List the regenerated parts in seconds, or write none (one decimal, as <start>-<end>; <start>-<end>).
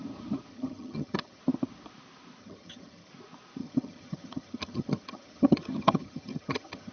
0.5-1.4; 2.4-3.1; 3.6-6.9